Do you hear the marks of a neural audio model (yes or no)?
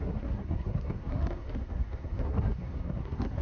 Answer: yes